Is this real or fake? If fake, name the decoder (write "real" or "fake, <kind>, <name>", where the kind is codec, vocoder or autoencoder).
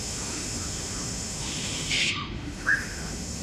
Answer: fake, autoencoder, DAC-VAE